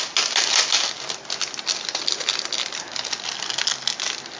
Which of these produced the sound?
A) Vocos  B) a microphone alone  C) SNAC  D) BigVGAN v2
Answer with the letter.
B